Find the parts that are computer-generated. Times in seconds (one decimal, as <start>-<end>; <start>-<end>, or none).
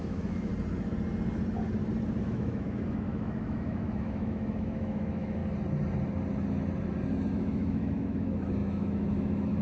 0.0-0.5; 2.2-5.4; 7.3-9.6